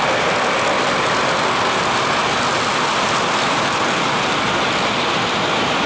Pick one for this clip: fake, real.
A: real